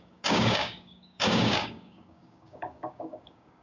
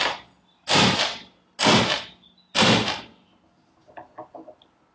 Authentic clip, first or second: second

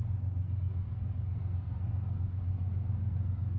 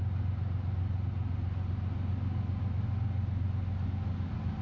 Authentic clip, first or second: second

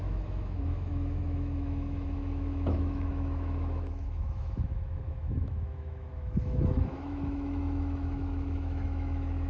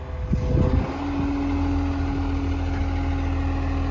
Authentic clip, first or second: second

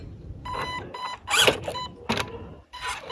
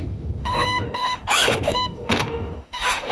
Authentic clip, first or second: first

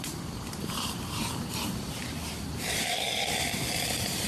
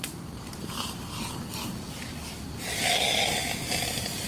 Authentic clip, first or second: second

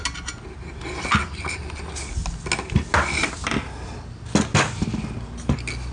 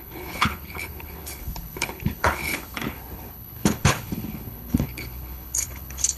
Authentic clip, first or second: first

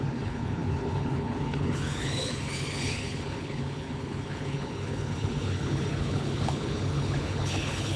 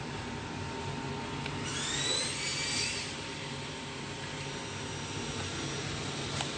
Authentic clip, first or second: second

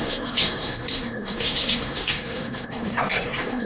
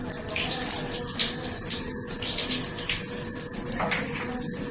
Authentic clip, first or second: second